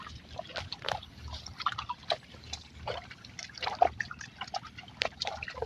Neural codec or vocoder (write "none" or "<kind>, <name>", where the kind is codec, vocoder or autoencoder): none